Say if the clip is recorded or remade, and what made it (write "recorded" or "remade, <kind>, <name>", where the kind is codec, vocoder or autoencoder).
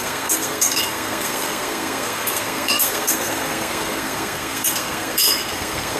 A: remade, codec, SNAC